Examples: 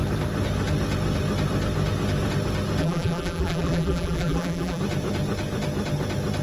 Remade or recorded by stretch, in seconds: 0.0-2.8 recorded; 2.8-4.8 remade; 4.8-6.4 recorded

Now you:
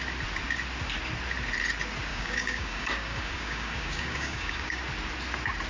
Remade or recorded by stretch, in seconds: 0.0-2.1 recorded; 2.1-4.8 remade; 4.8-5.7 recorded